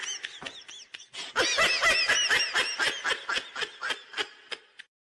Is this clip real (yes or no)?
yes